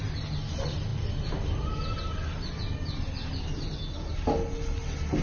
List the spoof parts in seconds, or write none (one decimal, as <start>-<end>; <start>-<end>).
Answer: none